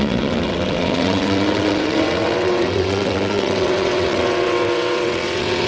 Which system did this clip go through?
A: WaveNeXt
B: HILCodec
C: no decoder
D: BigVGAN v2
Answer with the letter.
A